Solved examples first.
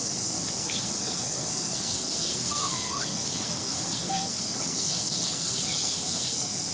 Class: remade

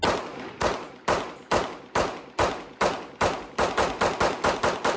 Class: recorded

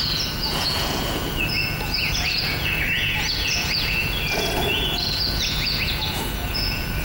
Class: remade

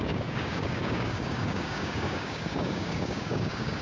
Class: remade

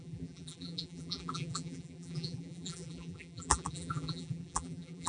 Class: remade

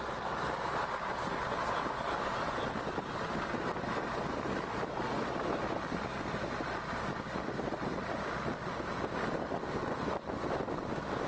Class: recorded